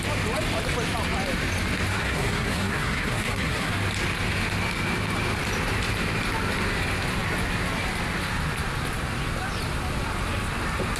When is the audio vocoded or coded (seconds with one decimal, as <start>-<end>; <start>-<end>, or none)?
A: 1.9-3.7